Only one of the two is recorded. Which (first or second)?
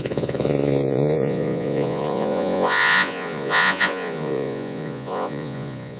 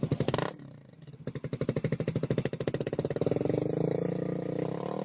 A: second